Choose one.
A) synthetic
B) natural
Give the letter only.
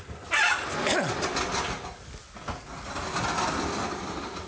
B